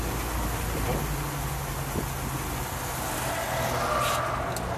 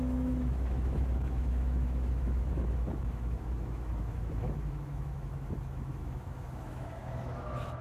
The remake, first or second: second